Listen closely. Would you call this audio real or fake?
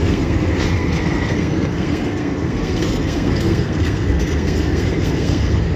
fake